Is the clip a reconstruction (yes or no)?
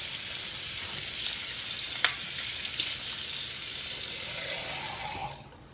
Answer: no